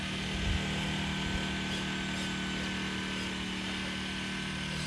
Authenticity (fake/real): real